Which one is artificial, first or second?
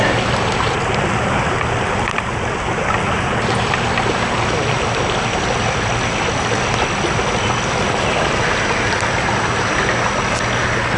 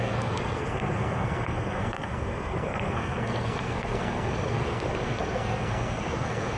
second